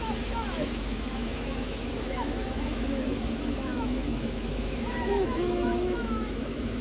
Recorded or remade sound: remade